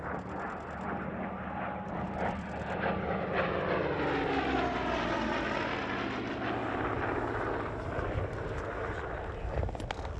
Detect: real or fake real